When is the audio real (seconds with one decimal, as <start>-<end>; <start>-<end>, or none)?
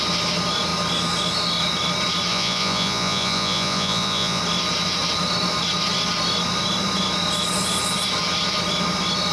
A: 0.0-2.3; 4.4-9.3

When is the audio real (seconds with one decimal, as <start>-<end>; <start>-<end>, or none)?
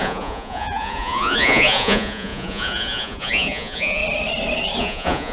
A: 4.0-4.8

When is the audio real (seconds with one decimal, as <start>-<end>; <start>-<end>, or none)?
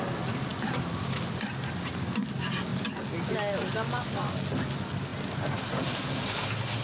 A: 0.0-6.8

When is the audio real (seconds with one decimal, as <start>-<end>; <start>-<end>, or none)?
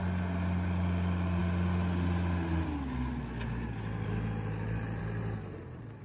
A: 0.0-6.0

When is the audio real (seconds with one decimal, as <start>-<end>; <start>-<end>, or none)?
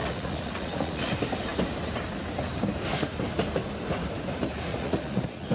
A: 1.1-4.7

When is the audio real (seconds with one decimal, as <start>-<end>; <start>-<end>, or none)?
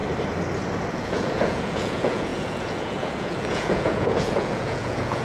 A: 0.0-0.9